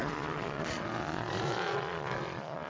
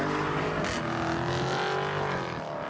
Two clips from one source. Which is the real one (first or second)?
second